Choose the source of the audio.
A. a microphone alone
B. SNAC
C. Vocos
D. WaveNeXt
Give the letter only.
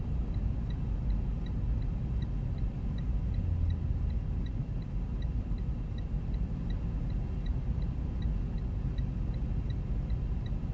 A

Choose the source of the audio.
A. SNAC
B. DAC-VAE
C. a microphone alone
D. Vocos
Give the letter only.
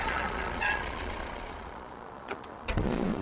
D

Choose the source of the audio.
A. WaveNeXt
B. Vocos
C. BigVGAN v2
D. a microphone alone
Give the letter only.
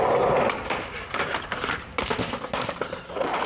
D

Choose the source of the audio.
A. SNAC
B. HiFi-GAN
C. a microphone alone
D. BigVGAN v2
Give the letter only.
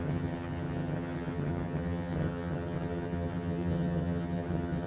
B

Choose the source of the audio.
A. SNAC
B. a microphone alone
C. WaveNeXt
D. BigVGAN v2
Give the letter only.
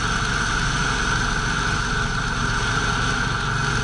B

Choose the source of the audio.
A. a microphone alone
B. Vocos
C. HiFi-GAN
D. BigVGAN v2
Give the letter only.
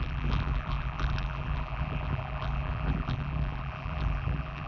D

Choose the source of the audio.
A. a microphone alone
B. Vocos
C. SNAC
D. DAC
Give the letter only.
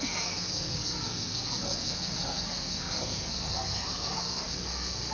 C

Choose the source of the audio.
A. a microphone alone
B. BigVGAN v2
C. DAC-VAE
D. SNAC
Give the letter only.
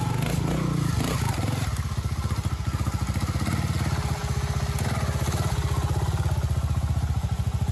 A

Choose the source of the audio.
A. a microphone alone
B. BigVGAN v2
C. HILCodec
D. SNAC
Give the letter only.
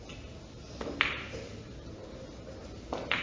A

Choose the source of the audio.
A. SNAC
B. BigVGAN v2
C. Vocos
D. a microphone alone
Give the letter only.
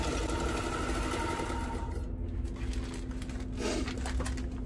D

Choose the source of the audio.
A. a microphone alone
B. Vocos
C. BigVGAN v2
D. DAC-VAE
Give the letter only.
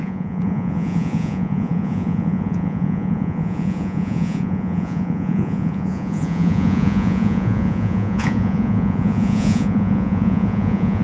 B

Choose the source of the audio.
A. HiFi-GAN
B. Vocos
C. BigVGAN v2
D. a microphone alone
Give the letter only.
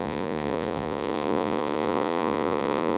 B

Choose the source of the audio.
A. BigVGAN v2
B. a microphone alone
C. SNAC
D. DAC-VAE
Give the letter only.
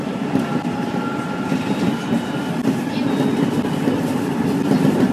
B